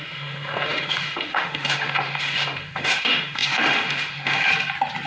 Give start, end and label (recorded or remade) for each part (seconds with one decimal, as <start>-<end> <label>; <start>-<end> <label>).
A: 0.0-4.5 remade; 4.5-5.1 recorded